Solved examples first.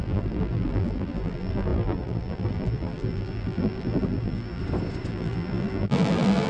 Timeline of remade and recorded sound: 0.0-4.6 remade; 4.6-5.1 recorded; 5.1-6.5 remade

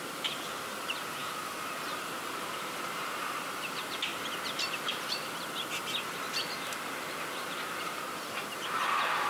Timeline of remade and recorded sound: 0.0-4.1 remade; 4.1-7.8 recorded; 7.8-9.3 remade

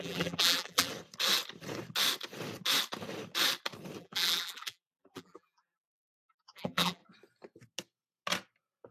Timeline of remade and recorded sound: 0.0-0.9 remade; 0.9-4.0 recorded; 4.0-7.0 remade; 7.0-8.9 recorded

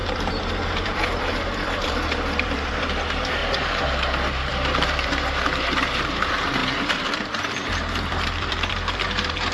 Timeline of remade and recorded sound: 0.0-9.5 remade

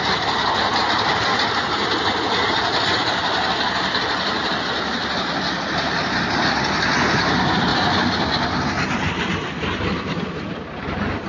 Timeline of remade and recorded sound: 0.0-7.7 recorded; 7.7-8.3 remade; 8.3-11.3 recorded

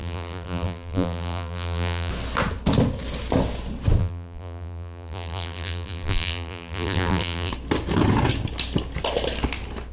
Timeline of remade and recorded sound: 0.0-2.1 remade; 2.1-4.0 recorded; 4.0-7.5 remade; 7.5-9.9 recorded